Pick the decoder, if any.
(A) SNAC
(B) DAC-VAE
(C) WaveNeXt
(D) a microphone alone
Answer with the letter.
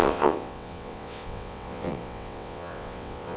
C